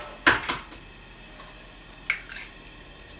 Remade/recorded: recorded